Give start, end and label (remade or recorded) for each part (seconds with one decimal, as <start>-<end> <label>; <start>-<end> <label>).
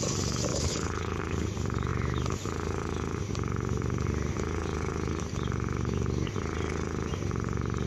0.0-0.5 recorded; 0.5-1.2 remade; 1.2-7.9 recorded